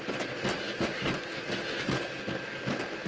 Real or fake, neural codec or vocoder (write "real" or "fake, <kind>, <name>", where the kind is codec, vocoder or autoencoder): real